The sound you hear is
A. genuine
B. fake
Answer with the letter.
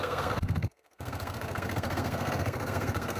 B